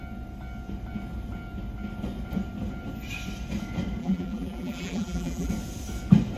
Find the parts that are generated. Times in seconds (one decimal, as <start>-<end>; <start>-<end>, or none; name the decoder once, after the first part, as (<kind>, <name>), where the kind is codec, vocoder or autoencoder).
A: 4.0-5.5 (vocoder, BigVGAN v2)